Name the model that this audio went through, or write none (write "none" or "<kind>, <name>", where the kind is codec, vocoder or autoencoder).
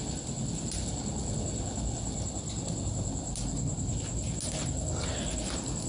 none